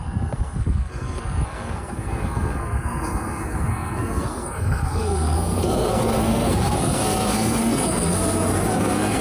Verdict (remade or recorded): remade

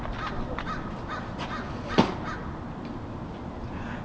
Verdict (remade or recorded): recorded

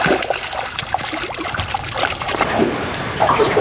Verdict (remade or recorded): remade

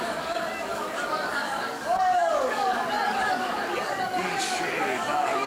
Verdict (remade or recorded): remade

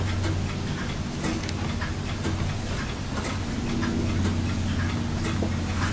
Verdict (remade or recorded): recorded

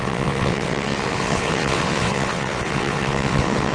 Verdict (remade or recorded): remade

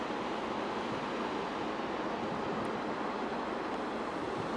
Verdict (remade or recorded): recorded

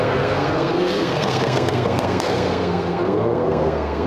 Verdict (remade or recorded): remade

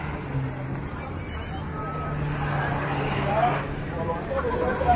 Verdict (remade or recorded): recorded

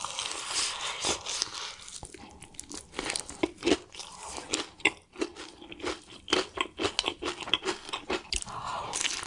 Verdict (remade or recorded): recorded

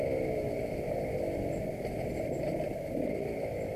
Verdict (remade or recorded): recorded